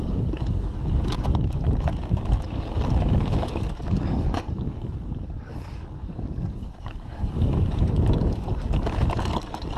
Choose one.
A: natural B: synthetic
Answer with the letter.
B